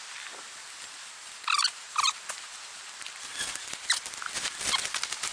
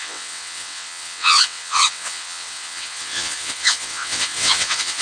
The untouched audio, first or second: first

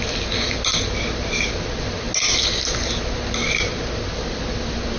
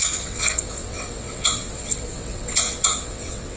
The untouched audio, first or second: first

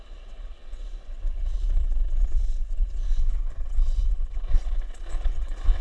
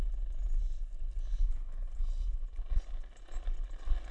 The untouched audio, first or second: second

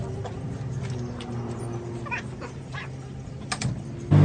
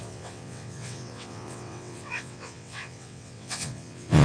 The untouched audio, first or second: first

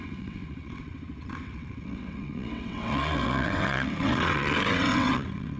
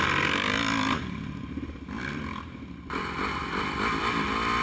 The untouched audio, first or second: second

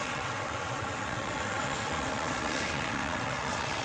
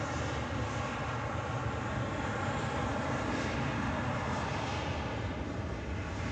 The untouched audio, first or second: second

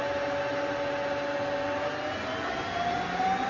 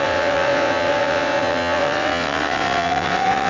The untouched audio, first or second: first